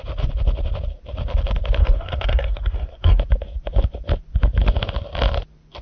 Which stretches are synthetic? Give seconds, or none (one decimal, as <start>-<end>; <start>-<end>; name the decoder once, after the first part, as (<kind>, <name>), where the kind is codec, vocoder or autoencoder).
1.8-3.2 (codec, SNAC)